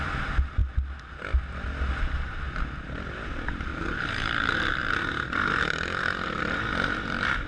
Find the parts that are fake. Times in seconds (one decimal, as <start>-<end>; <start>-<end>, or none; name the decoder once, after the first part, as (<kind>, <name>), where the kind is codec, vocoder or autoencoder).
3.7-4.7 (vocoder, BigVGAN v2)